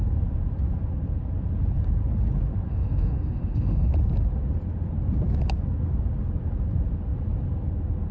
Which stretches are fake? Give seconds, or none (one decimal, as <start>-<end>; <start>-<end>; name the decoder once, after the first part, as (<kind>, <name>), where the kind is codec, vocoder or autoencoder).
2.7-3.9 (autoencoder, DAC-VAE)